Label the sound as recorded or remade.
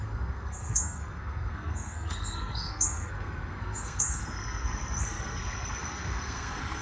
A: remade